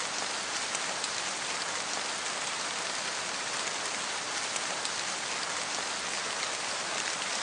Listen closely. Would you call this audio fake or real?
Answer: real